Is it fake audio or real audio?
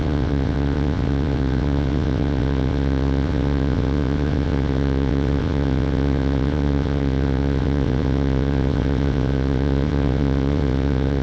fake